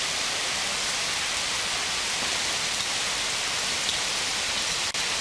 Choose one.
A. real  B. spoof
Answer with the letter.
A